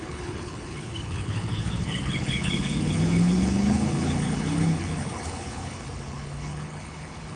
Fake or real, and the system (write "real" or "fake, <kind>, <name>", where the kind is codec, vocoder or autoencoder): fake, codec, HILCodec